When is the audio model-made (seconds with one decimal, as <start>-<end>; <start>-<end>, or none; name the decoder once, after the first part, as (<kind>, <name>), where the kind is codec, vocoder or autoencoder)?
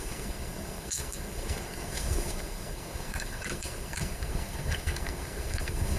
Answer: 0.0-6.0 (codec, SNAC)